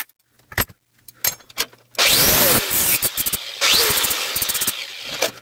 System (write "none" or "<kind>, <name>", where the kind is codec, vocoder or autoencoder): none